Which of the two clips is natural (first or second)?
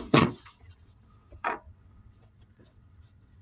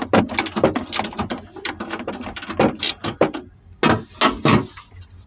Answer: second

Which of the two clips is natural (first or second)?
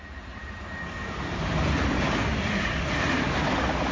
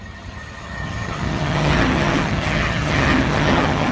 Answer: first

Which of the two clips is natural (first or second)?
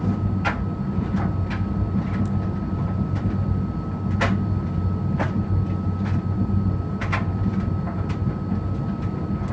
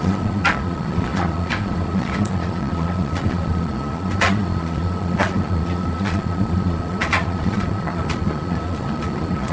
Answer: first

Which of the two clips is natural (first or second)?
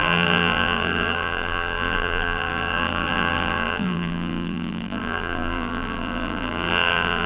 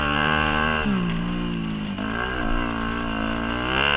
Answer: second